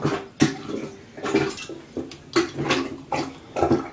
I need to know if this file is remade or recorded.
recorded